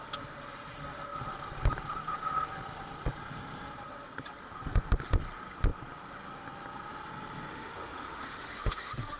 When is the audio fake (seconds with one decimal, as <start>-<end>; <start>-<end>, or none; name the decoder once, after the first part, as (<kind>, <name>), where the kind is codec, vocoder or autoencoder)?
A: 7.5-9.2 (autoencoder, DAC-VAE)